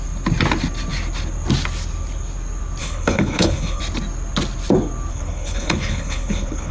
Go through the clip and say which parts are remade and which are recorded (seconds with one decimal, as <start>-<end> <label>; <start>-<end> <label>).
0.0-2.8 recorded; 2.8-3.8 remade; 3.8-5.1 recorded; 5.1-6.7 remade